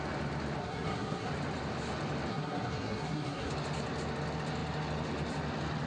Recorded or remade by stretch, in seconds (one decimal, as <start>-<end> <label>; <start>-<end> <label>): 0.0-0.6 recorded; 0.6-1.3 remade; 1.3-2.3 recorded; 2.3-3.5 remade; 3.5-5.9 recorded